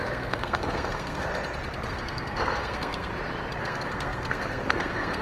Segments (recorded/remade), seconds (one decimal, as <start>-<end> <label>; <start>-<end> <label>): 0.0-1.3 remade; 1.3-1.9 recorded; 1.9-3.1 remade; 3.1-3.6 recorded; 3.6-5.2 remade